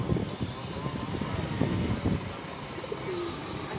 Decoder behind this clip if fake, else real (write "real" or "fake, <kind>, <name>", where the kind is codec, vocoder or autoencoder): real